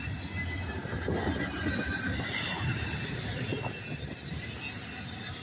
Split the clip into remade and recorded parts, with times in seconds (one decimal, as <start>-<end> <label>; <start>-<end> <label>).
0.0-5.4 recorded